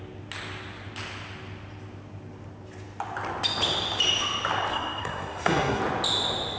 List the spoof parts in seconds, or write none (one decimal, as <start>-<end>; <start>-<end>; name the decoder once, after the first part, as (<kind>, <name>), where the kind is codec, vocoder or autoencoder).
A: 4.7-5.8 (codec, SNAC)